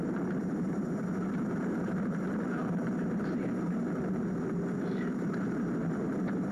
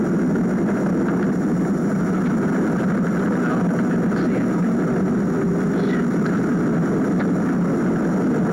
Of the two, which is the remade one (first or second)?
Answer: first